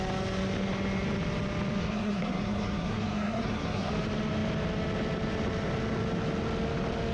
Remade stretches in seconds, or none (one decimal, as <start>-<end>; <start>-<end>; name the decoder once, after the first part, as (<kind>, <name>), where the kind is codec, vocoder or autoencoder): 1.8-3.9 (codec, SNAC)